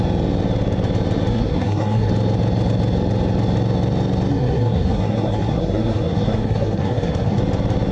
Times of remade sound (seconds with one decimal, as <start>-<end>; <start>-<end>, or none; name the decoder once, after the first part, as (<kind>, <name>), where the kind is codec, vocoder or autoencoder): 1.3-2.1 (codec, SNAC); 4.3-7.4